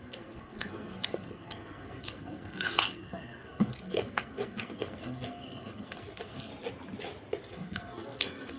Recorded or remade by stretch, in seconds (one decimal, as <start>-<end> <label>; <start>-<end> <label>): 0.0-6.5 remade; 6.5-7.5 recorded; 7.5-8.6 remade